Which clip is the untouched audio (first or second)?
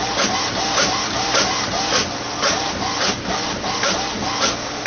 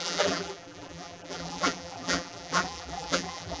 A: first